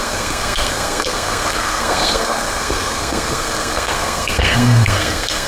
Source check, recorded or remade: remade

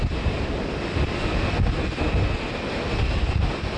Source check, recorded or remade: recorded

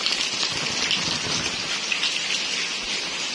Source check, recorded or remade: recorded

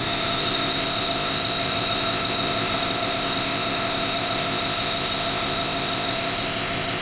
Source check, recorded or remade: remade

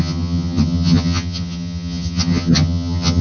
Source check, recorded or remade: remade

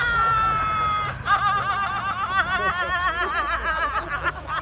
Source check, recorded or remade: recorded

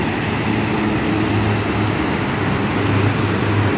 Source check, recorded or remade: recorded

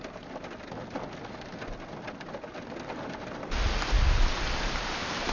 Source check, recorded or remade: recorded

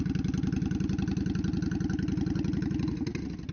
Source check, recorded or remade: recorded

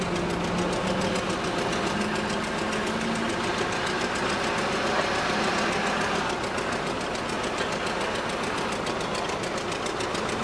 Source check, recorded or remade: recorded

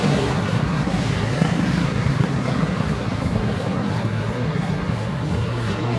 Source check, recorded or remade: remade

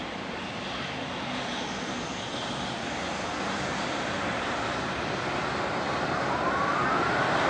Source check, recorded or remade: recorded